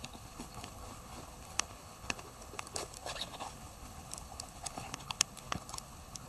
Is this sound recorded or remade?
remade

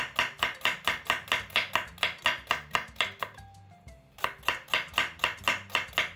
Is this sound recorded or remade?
recorded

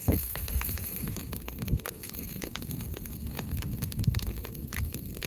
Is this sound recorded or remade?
remade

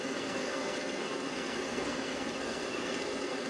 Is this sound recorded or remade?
remade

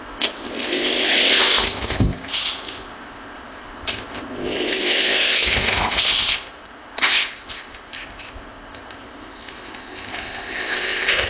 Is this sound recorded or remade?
remade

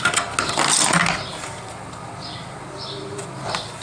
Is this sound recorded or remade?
recorded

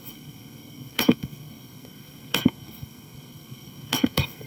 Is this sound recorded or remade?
remade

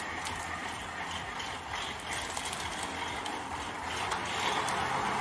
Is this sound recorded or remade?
recorded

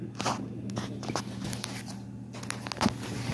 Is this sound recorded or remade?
recorded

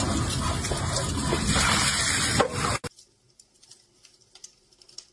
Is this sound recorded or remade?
recorded